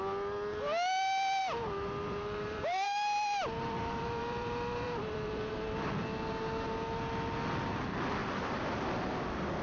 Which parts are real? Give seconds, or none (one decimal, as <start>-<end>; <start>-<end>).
0.0-1.4; 5.5-8.2; 8.8-9.6